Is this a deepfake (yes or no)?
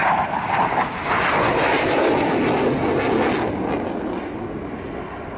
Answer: no